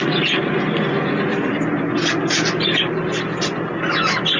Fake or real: real